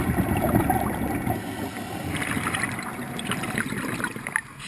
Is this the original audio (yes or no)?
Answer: yes